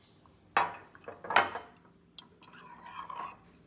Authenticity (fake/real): real